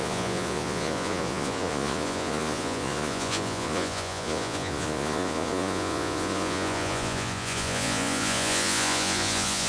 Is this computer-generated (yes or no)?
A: yes